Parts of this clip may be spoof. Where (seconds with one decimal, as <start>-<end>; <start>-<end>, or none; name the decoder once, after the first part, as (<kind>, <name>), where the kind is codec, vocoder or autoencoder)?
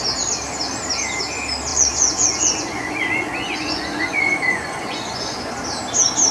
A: 1.7-5.5 (vocoder, Vocos)